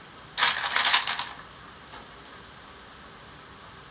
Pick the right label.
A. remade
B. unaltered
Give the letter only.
B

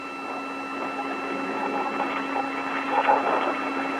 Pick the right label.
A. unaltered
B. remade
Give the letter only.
A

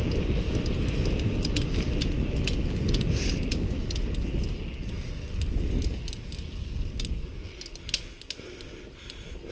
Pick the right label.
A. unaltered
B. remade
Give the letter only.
A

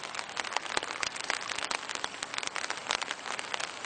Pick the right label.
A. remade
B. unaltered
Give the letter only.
B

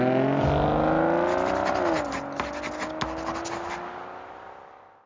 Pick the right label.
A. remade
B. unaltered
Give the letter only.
B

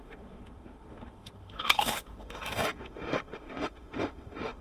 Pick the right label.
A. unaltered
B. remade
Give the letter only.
B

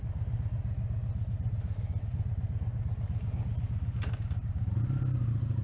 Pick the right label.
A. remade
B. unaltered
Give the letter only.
B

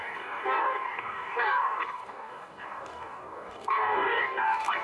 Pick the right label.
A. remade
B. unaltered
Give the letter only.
A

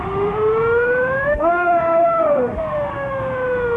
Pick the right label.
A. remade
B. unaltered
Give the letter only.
A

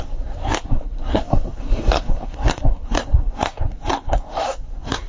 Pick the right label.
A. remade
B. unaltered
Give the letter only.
A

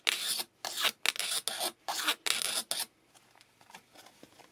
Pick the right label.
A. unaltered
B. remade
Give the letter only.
A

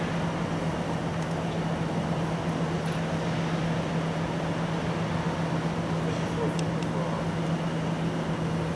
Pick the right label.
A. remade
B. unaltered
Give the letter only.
B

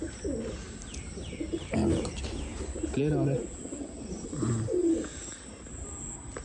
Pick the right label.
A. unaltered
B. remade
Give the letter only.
A